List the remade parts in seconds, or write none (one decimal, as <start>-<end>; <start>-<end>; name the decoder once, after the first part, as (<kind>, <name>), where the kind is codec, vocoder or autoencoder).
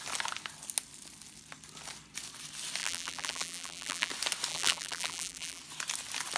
2.8-4.1 (vocoder, BigVGAN v2); 4.5-5.6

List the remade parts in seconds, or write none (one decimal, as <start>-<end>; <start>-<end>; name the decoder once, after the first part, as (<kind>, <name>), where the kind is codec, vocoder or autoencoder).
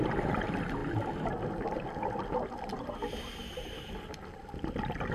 none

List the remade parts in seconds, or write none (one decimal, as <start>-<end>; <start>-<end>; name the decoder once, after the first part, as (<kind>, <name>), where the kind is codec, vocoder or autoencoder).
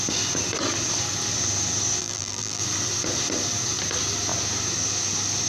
2.0-2.6 (vocoder, BigVGAN v2)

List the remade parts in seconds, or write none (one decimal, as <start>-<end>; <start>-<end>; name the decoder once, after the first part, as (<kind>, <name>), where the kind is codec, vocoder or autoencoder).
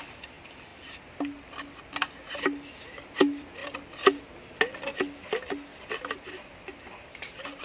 3.6-4.2 (vocoder, BigVGAN v2); 5.7-7.6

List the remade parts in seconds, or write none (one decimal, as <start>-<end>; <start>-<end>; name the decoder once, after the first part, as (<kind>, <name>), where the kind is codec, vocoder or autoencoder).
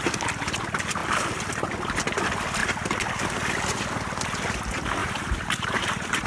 5.0-6.3 (vocoder, BigVGAN v2)